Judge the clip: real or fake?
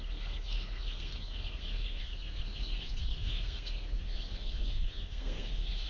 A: fake